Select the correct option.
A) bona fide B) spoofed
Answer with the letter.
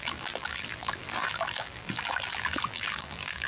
B